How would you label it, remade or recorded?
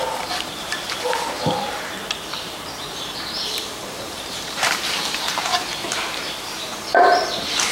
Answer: remade